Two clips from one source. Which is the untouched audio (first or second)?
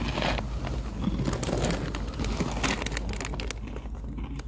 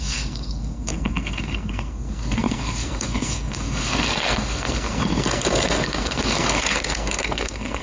first